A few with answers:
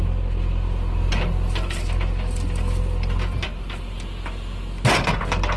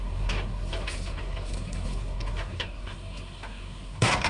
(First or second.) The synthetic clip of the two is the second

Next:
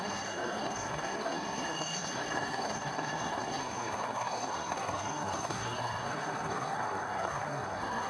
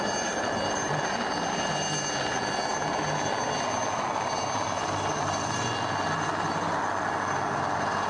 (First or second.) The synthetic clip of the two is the first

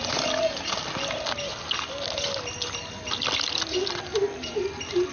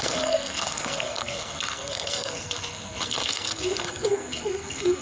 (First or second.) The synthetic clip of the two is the second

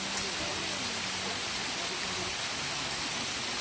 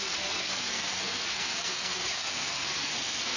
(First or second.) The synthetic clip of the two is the second